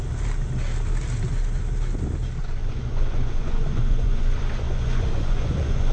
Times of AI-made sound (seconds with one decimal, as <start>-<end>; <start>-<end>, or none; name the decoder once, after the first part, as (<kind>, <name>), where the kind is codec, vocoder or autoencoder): 2.4-5.9 (vocoder, Vocos)